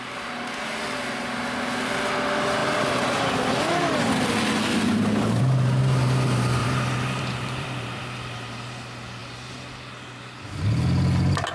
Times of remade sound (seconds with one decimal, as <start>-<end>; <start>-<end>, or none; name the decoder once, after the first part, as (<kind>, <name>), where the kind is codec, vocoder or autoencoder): 6.6-8.0 (vocoder, BigVGAN v2)